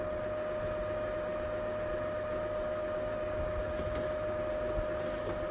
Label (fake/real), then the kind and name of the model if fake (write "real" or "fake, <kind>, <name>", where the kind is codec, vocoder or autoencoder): real